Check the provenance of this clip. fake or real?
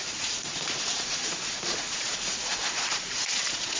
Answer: fake